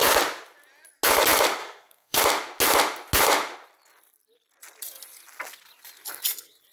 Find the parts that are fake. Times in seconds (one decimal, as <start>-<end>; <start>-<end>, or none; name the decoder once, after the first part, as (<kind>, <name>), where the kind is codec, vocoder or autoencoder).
1.6-2.2 (codec, SNAC)